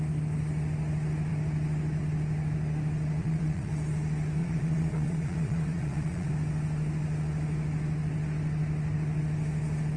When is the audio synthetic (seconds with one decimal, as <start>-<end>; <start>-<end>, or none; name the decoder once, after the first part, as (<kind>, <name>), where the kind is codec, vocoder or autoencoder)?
3.2-3.7 (vocoder, Vocos); 4.4-6.3